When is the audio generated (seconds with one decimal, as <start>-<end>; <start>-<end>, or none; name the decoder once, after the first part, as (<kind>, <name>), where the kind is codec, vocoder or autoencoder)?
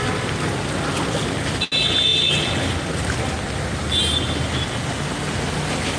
0.0-1.4 (vocoder, BigVGAN v2)